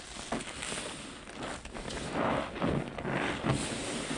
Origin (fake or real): real